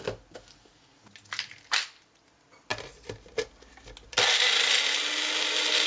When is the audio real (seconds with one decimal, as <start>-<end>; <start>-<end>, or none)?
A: 0.0-5.9